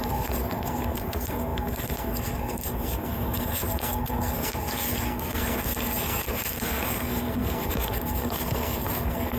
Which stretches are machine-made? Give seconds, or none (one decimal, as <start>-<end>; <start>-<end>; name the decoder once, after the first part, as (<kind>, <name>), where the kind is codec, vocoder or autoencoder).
0.0-9.4 (codec, SNAC)